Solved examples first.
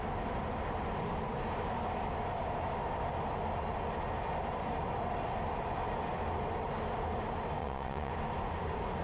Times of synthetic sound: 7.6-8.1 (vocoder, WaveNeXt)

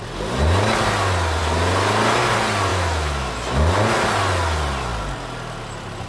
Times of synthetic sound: 2.7-3.3 (autoencoder, DAC-VAE)

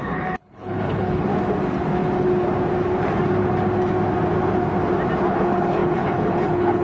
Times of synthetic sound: 0.0-1.3 (codec, HILCodec); 5.3-6.8

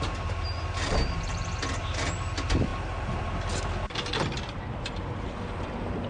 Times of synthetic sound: none

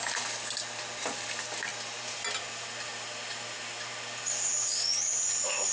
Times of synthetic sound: none

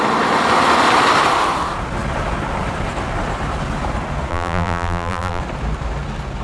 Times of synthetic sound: 4.3-5.4 (vocoder, BigVGAN v2)